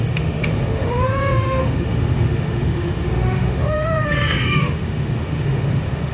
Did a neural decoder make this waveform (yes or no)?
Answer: yes